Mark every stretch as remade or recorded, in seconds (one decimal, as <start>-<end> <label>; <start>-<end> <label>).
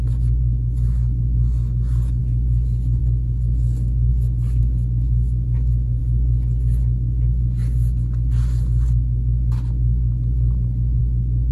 0.0-11.5 recorded